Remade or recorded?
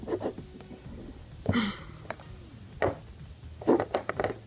recorded